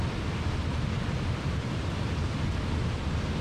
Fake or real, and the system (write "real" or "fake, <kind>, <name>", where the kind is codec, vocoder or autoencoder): real